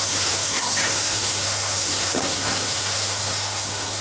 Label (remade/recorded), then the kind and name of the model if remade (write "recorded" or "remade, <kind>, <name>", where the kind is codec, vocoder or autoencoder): remade, codec, SNAC